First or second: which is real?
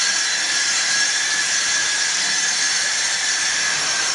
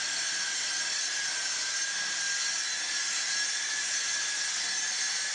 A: second